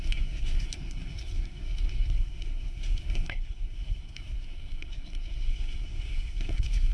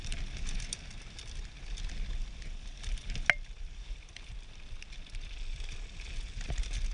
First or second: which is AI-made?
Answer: first